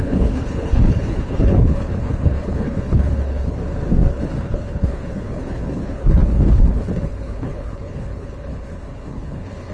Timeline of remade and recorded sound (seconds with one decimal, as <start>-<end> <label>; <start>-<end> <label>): 0.0-3.6 remade; 3.6-4.1 recorded; 4.1-9.7 remade